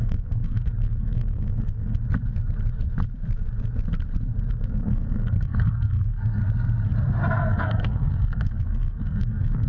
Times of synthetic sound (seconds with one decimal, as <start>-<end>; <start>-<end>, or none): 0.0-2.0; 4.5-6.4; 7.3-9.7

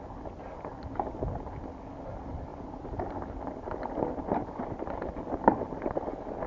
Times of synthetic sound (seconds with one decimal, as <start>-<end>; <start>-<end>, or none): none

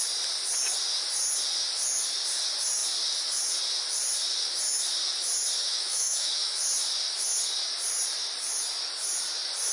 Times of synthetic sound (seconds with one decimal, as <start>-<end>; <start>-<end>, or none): 5.6-6.6

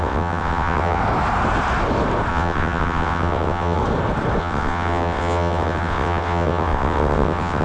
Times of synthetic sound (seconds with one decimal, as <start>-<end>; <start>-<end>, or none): 0.0-1.0; 2.3-3.8; 4.4-7.6

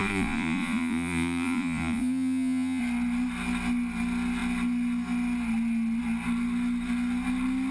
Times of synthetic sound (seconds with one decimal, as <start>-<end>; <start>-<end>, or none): 0.0-2.8